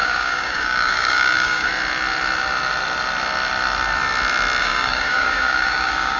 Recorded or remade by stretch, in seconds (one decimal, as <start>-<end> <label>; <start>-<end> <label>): 0.0-1.7 remade; 1.7-4.6 recorded; 4.6-6.2 remade